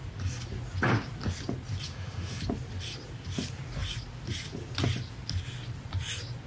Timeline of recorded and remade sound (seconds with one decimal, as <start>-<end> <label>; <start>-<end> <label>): 0.0-1.9 recorded; 1.9-2.4 remade; 2.4-6.5 recorded